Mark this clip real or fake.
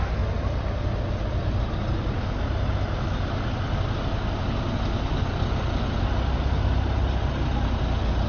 real